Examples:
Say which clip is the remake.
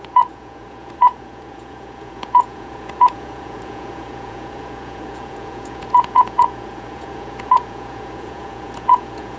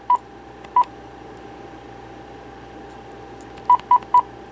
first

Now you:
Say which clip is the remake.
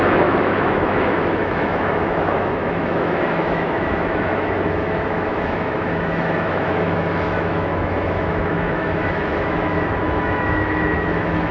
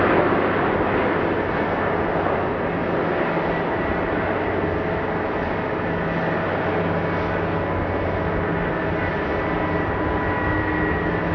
first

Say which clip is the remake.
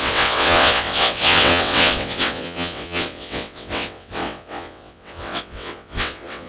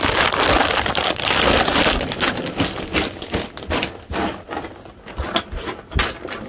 first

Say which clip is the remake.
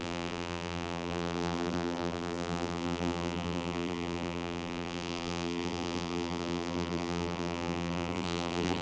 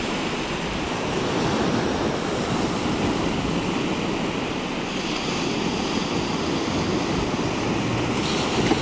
first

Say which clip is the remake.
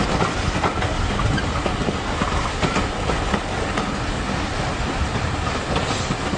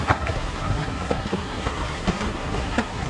second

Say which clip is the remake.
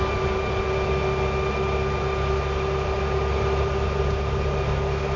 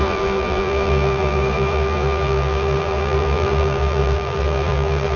second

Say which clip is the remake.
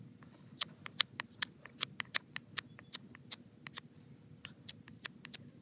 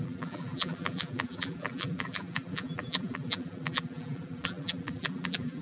second